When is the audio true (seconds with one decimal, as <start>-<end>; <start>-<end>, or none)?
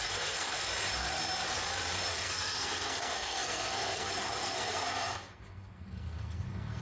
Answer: 0.7-2.1